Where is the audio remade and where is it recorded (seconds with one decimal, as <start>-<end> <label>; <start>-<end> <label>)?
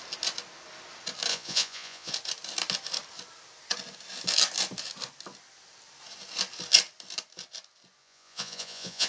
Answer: 0.0-1.3 recorded; 1.3-2.1 remade; 2.1-8.0 recorded; 8.0-9.1 remade